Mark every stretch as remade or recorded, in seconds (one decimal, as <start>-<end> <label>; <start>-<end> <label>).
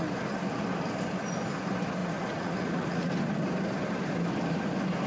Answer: 0.0-2.0 recorded; 2.0-3.1 remade; 3.1-5.1 recorded